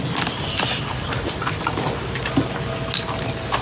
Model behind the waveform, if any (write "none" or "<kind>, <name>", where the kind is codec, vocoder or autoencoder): none